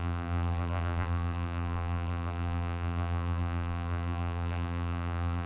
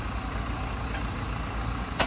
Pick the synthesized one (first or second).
first